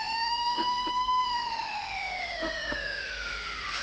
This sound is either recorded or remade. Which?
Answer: remade